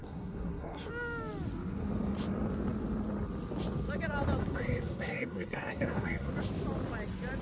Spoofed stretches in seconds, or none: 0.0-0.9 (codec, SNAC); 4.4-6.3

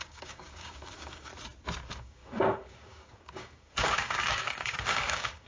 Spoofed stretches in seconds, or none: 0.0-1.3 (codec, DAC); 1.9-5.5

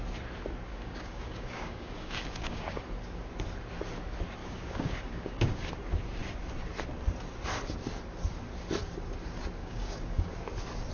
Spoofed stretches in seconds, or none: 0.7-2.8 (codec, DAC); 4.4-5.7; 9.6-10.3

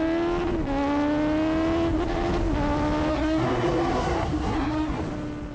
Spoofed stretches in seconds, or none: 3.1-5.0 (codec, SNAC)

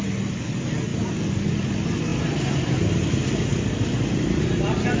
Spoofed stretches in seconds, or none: none

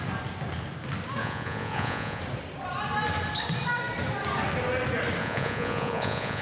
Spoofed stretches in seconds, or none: 1.2-2.2 (vocoder, Vocos); 5.2-6.4